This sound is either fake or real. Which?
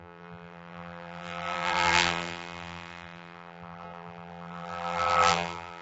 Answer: fake